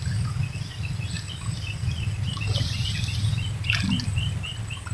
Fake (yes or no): no